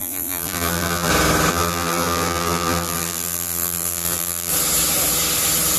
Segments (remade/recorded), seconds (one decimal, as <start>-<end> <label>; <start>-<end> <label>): 0.0-1.1 remade; 1.1-1.5 recorded; 1.5-4.5 remade; 4.5-5.8 recorded